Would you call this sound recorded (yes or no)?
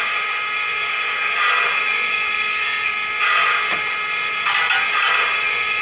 yes